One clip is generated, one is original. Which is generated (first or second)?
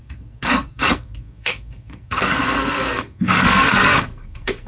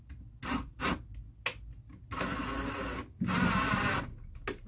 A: first